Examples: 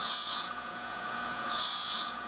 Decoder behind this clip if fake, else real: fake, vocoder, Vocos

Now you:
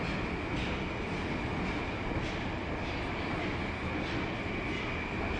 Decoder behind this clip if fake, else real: real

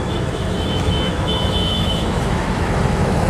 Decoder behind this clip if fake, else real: fake, autoencoder, DAC-VAE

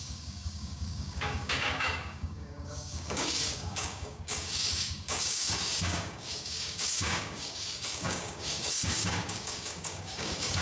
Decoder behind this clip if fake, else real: fake, codec, DAC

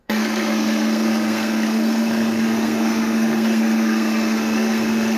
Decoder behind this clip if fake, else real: fake, codec, SNAC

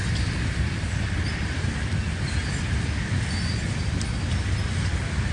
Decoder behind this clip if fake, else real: real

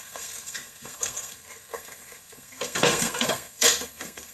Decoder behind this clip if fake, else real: fake, codec, SNAC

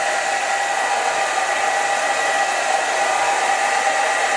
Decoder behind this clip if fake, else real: real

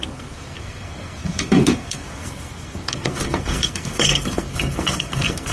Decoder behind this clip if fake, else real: fake, codec, SNAC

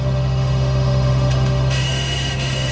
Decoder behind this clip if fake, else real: fake, autoencoder, DAC-VAE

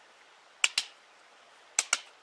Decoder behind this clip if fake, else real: real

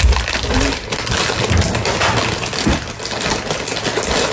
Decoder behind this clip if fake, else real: real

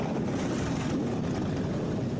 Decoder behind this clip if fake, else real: real